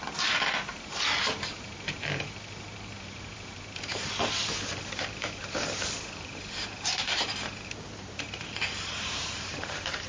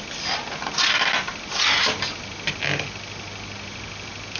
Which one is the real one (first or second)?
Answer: second